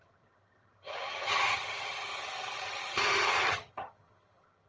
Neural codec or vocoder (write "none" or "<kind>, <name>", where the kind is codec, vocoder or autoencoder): vocoder, HiFi-GAN